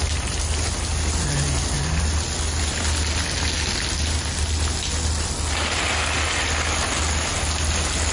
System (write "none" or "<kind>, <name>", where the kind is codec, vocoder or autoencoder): none